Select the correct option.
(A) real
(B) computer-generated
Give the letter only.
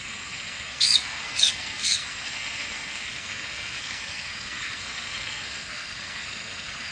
B